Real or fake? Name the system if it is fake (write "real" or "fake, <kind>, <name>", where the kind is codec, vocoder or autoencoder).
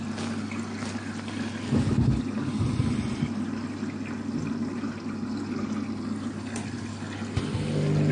real